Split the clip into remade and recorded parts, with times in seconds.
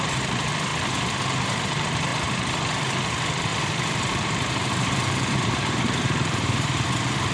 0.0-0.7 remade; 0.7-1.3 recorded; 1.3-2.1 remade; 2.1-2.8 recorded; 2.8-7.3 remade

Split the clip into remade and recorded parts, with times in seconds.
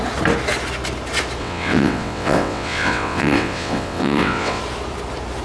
0.0-1.4 recorded; 1.4-4.6 remade; 4.6-5.4 recorded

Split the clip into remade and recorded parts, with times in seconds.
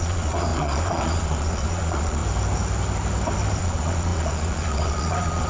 0.0-2.2 remade; 2.2-3.6 recorded; 3.6-5.5 remade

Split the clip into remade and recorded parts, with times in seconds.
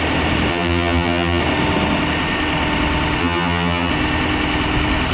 0.0-0.5 recorded; 0.5-1.4 remade; 1.4-3.2 recorded; 3.2-3.9 remade; 3.9-5.1 recorded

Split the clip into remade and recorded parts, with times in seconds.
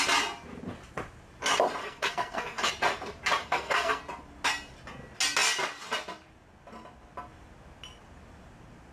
0.0-1.8 recorded; 1.8-2.7 remade; 2.7-3.4 recorded; 3.4-4.0 remade; 4.0-8.9 recorded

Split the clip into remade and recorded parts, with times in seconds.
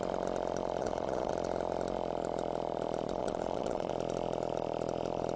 0.0-0.8 recorded; 0.8-1.3 remade; 1.3-3.2 recorded; 3.2-3.9 remade; 3.9-5.4 recorded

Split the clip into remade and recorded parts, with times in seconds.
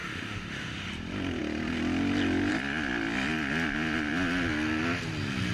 0.0-0.9 remade; 0.9-5.5 recorded